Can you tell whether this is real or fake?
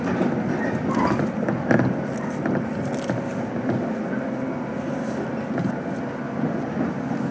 real